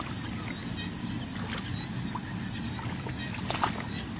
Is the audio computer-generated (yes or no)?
no